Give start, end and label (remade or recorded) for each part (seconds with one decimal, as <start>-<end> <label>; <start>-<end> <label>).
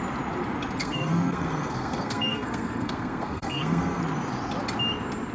0.0-0.8 recorded; 0.8-4.0 remade; 4.0-5.3 recorded